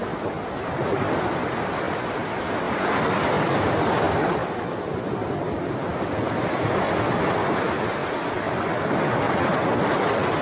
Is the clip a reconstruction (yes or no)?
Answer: no